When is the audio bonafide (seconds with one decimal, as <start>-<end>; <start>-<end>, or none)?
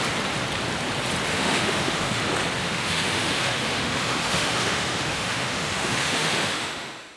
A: 0.0-1.3; 2.2-2.6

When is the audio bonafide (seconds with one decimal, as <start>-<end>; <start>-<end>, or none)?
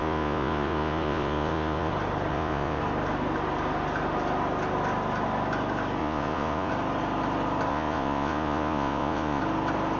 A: 1.9-2.3; 2.8-6.0; 6.7-7.7; 9.4-10.0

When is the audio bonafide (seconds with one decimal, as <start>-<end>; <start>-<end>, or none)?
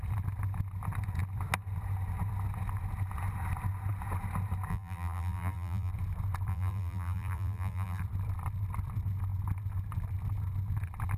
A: 0.0-4.7; 5.9-6.5; 8.0-11.2